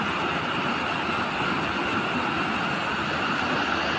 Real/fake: real